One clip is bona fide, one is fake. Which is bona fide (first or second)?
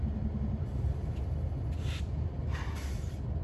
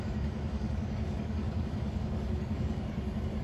first